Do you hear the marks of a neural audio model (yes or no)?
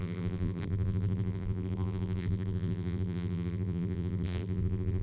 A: yes